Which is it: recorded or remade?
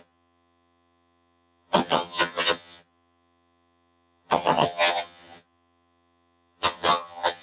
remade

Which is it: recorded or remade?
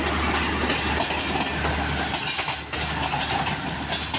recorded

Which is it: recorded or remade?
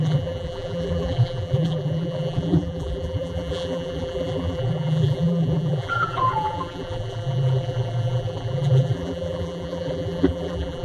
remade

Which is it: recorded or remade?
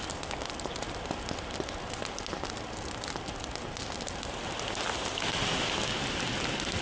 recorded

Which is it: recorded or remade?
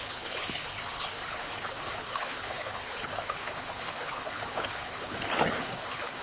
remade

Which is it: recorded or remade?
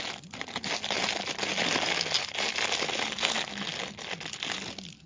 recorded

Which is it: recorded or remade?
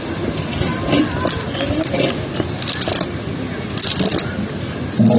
recorded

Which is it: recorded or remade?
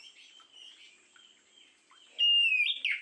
recorded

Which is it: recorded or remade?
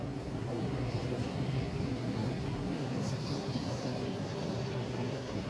remade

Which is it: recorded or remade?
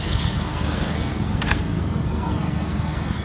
remade